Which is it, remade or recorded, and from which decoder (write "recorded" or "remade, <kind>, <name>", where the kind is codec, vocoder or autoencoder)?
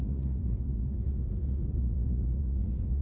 remade, vocoder, Vocos